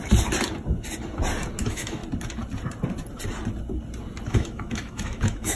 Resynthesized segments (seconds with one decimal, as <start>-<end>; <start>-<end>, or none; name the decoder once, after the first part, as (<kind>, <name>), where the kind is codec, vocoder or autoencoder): 1.6-2.0 (autoencoder, DAC-VAE); 4.3-5.6